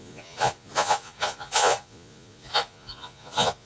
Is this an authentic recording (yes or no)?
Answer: no